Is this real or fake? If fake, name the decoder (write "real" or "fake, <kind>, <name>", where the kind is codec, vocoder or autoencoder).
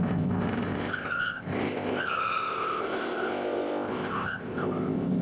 fake, codec, ZipCodec